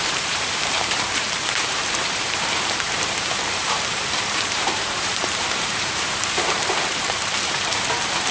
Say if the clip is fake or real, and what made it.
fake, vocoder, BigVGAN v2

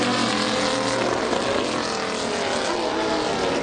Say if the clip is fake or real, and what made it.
real